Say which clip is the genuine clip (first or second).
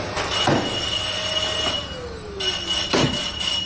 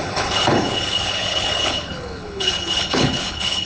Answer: first